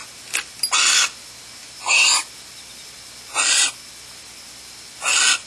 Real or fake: real